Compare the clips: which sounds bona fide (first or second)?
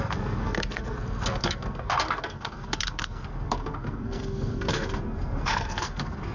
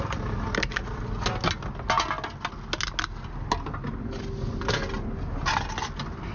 second